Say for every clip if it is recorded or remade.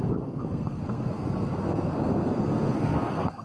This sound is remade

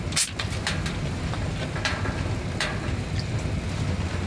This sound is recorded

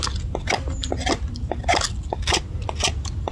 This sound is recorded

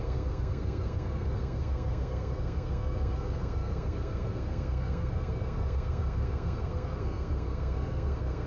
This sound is remade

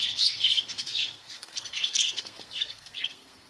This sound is remade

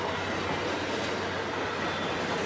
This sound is recorded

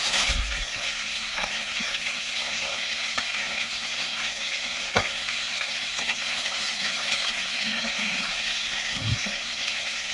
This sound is remade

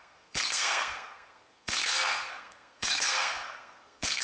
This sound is remade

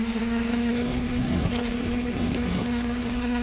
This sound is remade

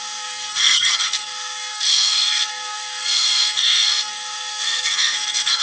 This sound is remade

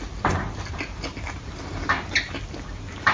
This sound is recorded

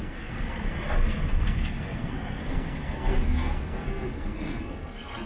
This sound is remade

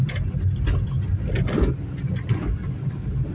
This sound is recorded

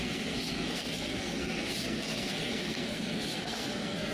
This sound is remade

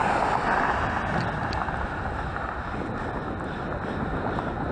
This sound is recorded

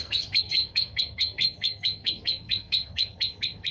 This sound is remade